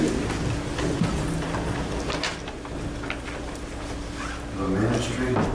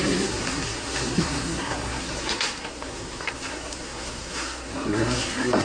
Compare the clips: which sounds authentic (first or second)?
first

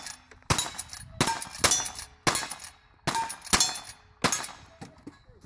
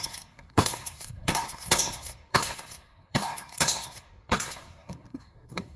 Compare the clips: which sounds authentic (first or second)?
first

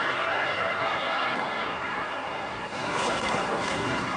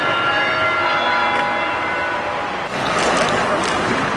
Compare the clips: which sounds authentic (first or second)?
second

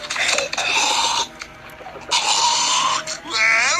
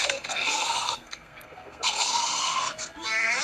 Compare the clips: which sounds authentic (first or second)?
first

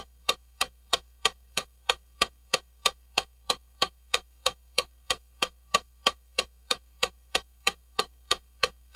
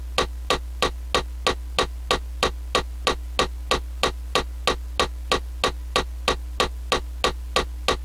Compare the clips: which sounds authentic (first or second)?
second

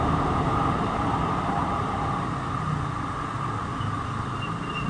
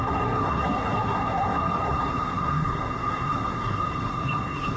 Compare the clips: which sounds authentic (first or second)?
first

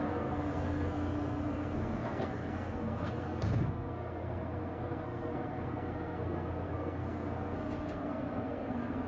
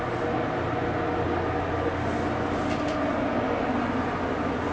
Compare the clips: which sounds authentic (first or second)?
second